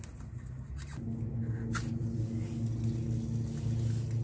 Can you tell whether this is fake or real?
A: real